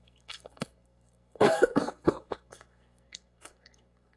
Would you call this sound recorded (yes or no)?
no